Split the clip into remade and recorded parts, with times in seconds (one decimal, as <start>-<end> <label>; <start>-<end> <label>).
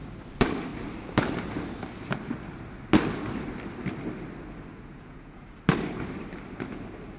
0.0-4.7 recorded; 4.7-5.4 remade; 5.4-7.2 recorded